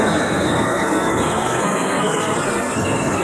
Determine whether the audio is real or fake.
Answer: fake